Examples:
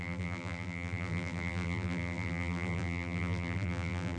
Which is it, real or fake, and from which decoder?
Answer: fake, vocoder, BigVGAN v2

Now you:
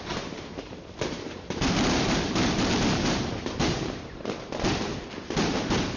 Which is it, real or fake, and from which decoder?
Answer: fake, vocoder, BigVGAN v2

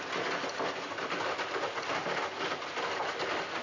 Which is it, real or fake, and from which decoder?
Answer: real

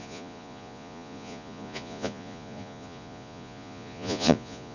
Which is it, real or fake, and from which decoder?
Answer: fake, vocoder, Vocos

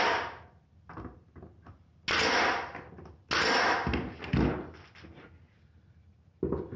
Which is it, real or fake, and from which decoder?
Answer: real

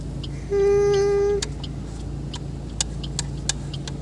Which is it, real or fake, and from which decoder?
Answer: real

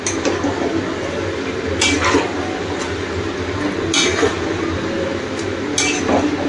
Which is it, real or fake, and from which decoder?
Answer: real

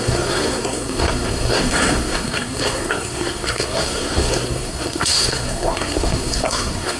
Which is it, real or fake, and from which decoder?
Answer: fake, codec, SNAC